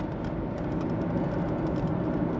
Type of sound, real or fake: real